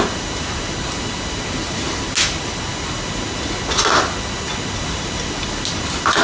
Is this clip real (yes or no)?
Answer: yes